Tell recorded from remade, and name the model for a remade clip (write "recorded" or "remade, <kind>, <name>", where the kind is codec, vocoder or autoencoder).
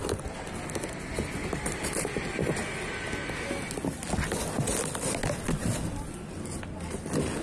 recorded